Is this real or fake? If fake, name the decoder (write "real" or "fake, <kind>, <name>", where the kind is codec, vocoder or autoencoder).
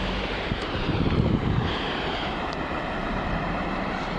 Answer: fake, vocoder, BigVGAN v2